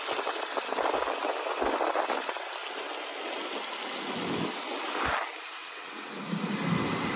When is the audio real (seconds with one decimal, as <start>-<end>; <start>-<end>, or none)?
0.0-5.6; 6.2-7.2